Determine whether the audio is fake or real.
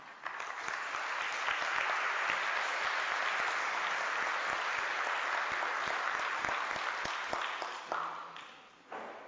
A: real